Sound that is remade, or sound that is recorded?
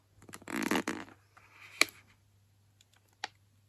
recorded